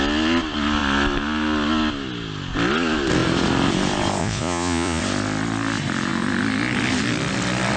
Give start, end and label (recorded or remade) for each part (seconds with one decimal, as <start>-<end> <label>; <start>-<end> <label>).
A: 0.0-4.2 recorded; 4.2-5.0 remade; 5.0-7.8 recorded